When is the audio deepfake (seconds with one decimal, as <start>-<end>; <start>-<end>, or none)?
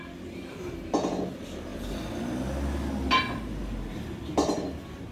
none